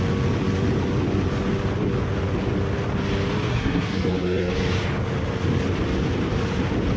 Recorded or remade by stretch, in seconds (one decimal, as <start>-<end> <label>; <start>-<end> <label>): 0.0-3.5 recorded; 3.5-4.5 remade; 4.5-7.0 recorded